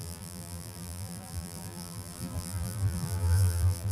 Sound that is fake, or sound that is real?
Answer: fake